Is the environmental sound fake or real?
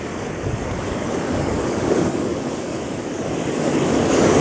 fake